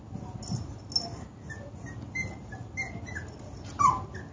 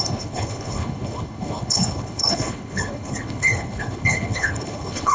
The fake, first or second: second